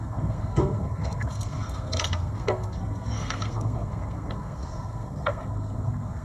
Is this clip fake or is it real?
fake